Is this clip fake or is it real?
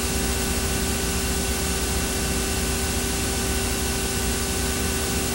fake